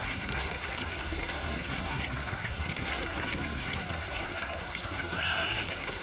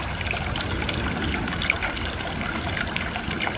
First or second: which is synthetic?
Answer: first